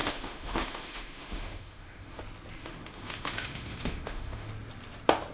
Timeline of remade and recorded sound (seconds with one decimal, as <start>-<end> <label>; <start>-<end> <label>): 0.0-2.2 remade; 2.2-2.6 recorded; 2.6-4.5 remade; 4.5-5.3 recorded